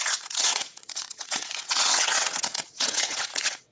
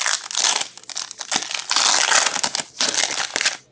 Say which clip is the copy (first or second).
first